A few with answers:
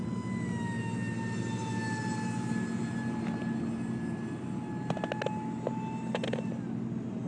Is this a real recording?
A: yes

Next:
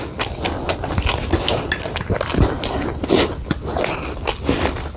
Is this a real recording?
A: yes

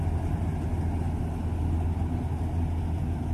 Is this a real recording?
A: yes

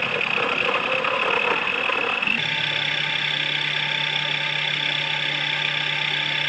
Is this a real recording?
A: yes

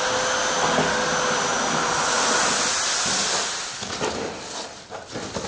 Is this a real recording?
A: yes